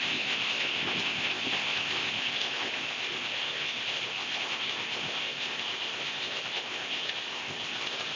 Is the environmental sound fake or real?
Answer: fake